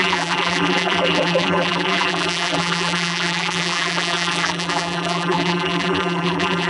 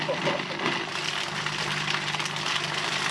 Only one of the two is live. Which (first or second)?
second